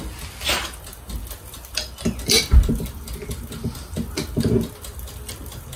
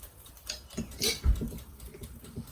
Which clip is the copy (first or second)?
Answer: second